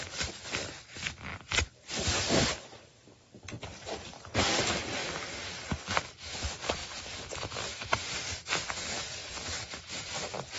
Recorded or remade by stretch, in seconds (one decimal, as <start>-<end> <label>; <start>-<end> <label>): 0.0-5.0 remade; 5.0-5.9 recorded; 5.9-10.6 remade